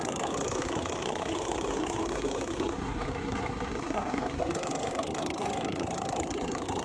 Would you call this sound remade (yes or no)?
yes